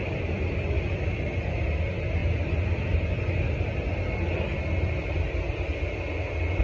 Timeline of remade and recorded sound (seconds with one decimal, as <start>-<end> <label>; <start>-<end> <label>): 0.0-6.6 recorded